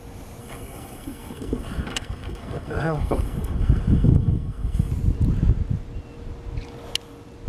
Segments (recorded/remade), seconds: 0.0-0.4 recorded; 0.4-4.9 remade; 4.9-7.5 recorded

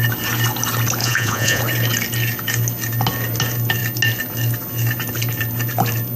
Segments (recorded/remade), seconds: 0.0-1.0 recorded; 1.0-1.6 remade; 1.6-6.2 recorded

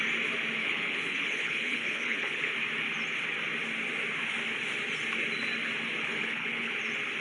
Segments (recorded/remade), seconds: 0.0-0.6 recorded; 0.6-2.5 remade; 2.5-6.1 recorded; 6.1-6.7 remade; 6.7-7.2 recorded

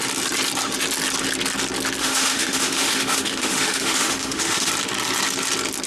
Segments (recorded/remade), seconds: 0.0-2.0 recorded; 2.0-4.7 remade; 4.7-5.9 recorded

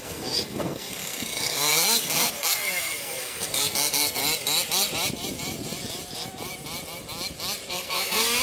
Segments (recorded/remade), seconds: 0.0-4.2 remade; 4.2-7.7 recorded; 7.7-8.4 remade

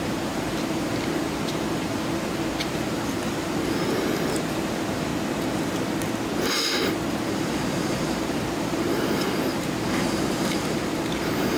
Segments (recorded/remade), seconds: 0.0-5.1 remade; 5.1-7.1 recorded; 7.1-11.6 remade

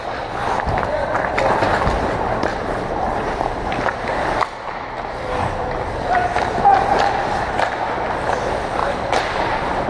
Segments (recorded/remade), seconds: 0.0-2.5 recorded; 2.5-3.7 remade; 3.7-8.8 recorded; 8.8-9.9 remade

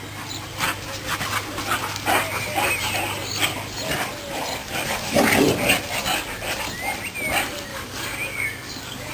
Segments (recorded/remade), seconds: 0.0-4.6 recorded; 4.6-5.2 remade; 5.2-7.7 recorded; 7.7-9.1 remade